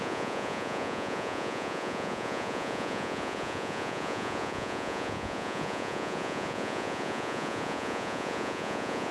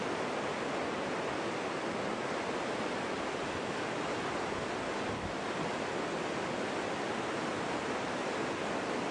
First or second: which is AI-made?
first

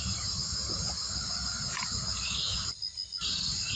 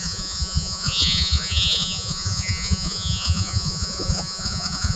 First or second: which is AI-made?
second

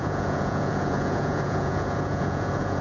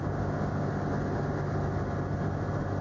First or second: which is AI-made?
first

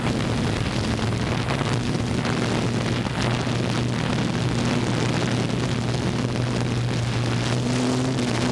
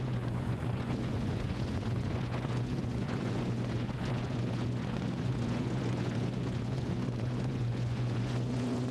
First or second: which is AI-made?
second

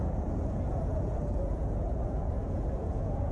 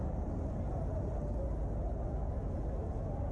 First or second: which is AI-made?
first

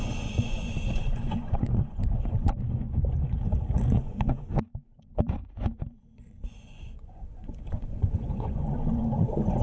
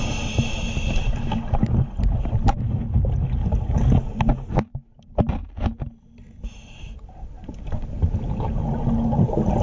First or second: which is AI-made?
first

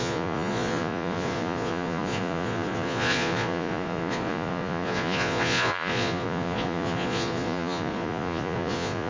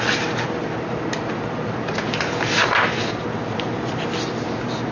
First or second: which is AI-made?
first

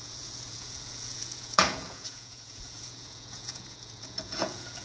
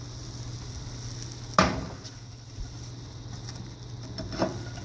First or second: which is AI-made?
first